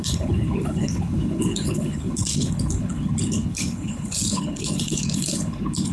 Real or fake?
fake